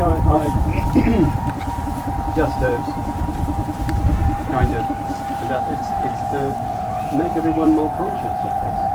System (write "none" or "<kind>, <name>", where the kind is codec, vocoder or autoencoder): vocoder, BigVGAN v2